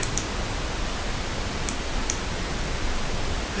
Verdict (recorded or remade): recorded